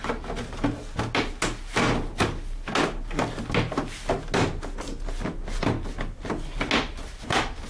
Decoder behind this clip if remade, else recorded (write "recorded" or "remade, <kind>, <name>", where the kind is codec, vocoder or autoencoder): recorded